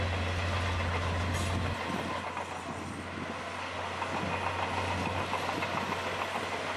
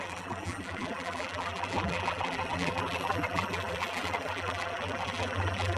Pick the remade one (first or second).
second